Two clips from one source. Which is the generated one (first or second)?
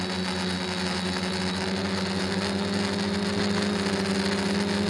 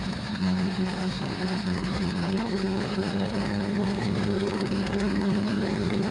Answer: second